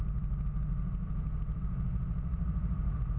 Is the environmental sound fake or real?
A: real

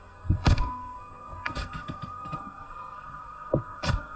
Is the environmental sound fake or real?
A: fake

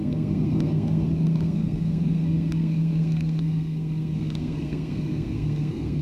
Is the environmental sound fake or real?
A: fake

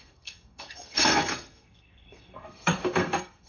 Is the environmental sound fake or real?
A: fake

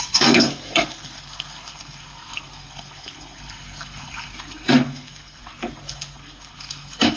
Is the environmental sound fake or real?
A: fake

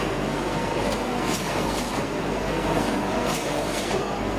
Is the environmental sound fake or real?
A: fake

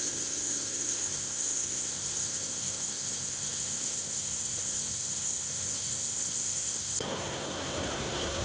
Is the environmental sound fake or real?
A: fake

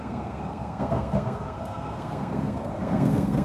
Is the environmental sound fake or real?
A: fake